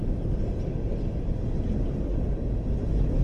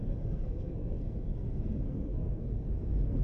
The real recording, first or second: first